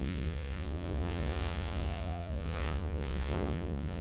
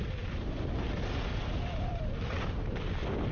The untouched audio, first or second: second